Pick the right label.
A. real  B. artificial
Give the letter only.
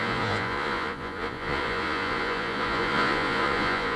B